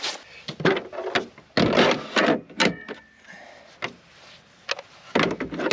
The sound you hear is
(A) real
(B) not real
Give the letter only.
A